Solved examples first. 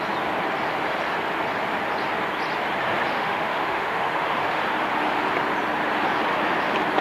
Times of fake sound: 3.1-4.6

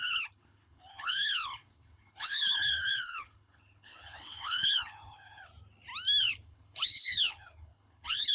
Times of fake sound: 0.0-5.5; 6.2-8.3

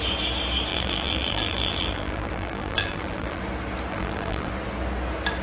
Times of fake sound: 0.7-3.4; 3.9-4.5

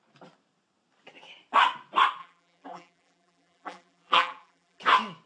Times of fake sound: 2.2-4.8

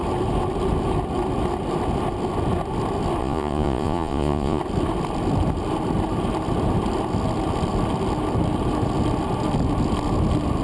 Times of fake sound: 3.2-4.6

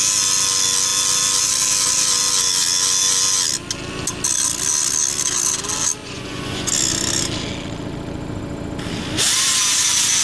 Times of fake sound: 6.0-6.7